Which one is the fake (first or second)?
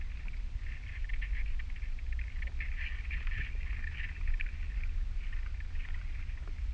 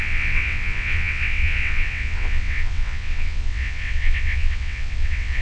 second